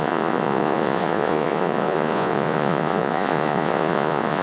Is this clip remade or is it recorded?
remade